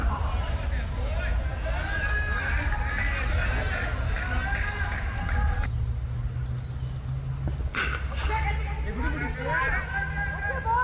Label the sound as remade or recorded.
recorded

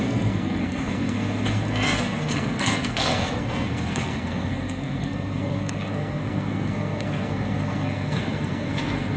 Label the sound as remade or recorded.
remade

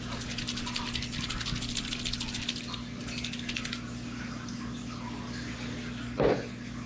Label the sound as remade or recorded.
recorded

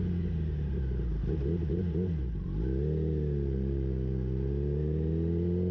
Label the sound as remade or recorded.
recorded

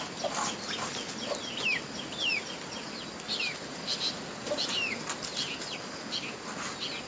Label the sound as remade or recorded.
recorded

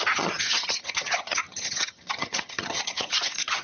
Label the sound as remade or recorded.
remade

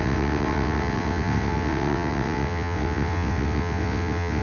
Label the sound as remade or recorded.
remade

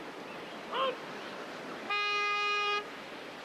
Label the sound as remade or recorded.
recorded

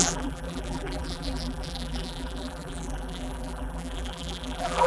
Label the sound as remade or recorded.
remade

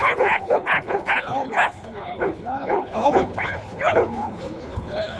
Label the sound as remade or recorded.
remade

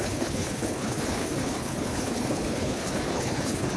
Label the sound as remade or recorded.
remade